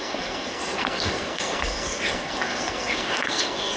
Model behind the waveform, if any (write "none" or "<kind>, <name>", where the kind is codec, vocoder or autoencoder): codec, SNAC